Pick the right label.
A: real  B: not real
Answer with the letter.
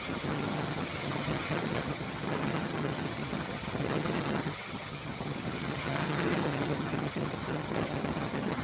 B